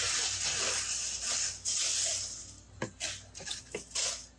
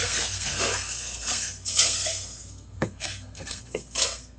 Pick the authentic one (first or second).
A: first